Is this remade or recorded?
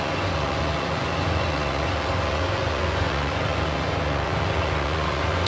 remade